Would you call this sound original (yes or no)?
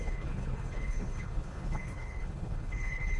no